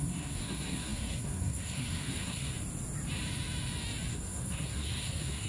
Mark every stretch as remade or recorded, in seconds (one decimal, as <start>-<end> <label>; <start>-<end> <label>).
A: 0.0-2.5 remade; 2.5-4.1 recorded; 4.1-5.5 remade